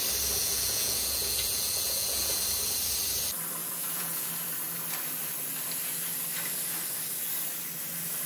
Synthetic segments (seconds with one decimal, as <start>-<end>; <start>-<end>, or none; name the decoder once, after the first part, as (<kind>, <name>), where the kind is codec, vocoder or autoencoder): 0.4-2.4 (vocoder, Vocos); 3.6-4.3